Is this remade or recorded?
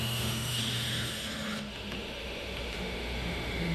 remade